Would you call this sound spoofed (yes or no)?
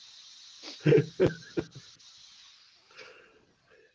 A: no